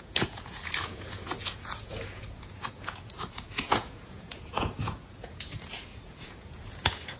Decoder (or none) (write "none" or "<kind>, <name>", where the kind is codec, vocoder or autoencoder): vocoder, Vocos